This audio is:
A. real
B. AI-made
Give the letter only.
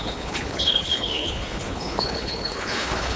B